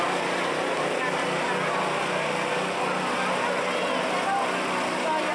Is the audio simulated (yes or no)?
no